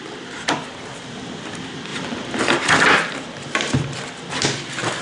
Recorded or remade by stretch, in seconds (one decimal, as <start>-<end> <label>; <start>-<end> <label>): 0.0-5.0 remade